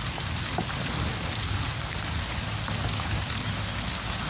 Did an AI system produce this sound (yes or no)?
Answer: no